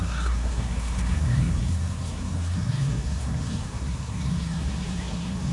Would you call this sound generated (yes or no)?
yes